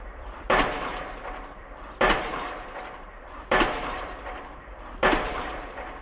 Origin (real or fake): fake